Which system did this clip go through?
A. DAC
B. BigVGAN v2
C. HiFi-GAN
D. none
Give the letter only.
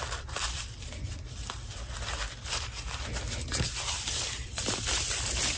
B